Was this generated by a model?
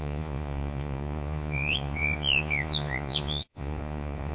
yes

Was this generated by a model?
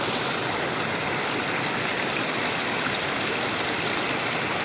no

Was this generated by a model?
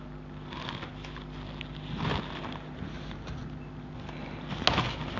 no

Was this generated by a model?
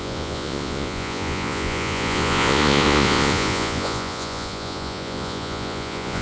yes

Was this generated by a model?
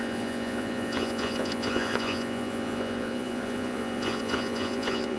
yes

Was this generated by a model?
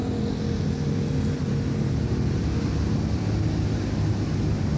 no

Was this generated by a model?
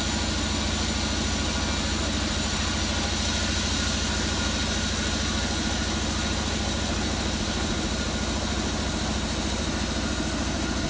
no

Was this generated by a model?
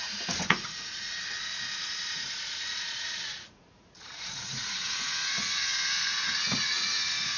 yes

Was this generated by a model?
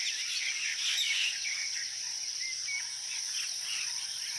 no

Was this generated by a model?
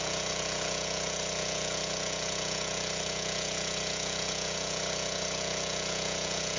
yes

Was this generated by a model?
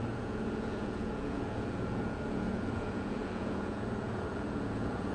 yes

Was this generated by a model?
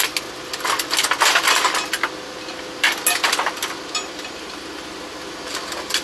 no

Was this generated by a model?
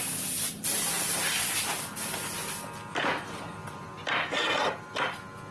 no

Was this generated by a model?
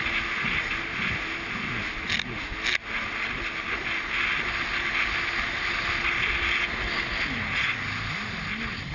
no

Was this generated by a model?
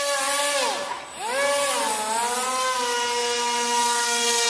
no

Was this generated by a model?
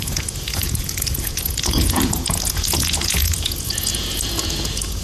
yes